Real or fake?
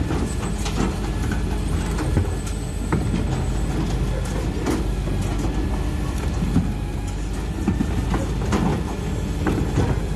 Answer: real